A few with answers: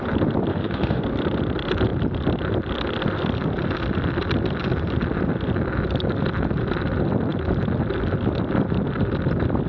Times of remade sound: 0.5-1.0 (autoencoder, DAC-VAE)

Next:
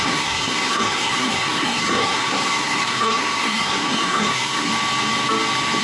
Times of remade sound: 0.0-4.7 (codec, SNAC)

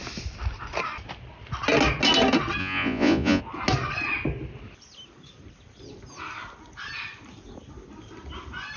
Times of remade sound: 2.6-3.4 (vocoder, Vocos)

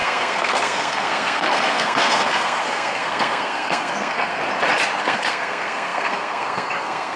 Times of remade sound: 0.0-4.4 (codec, SNAC); 5.0-7.2

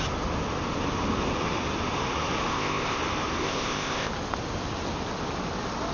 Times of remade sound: 2.5-3.0 (codec, ZipCodec); 3.4-4.1

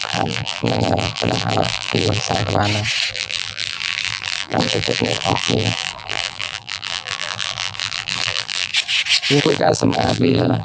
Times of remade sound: 0.0-2.6 (vocoder, BigVGAN v2); 3.1-8.7; 9.4-10.6

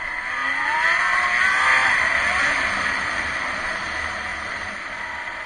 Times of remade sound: 1.8-2.4 (vocoder, BigVGAN v2); 2.9-3.8; 4.3-4.8

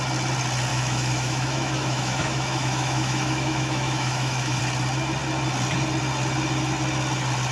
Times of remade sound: 0.7-4.6 (autoencoder, DAC-VAE)